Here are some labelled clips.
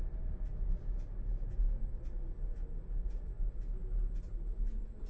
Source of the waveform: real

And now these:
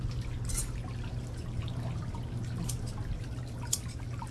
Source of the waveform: real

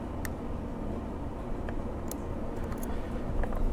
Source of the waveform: real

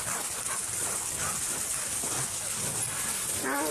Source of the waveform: real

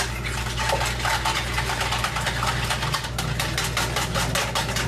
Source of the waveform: real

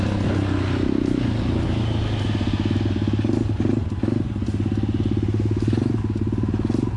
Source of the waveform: real